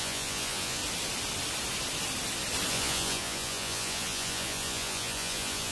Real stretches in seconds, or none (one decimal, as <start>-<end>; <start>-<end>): 0.8-2.7